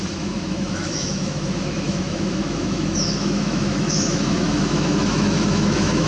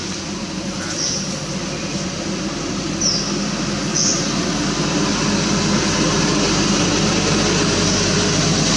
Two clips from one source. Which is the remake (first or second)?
first